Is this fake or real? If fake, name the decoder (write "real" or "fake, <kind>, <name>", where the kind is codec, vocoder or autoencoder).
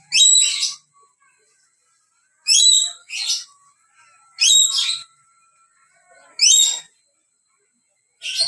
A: real